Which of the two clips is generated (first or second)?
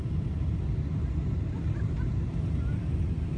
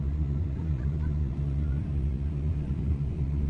second